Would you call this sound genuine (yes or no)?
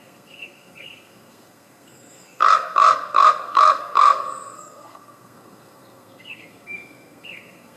no